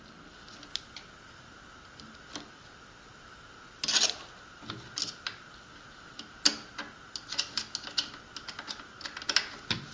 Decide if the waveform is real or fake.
real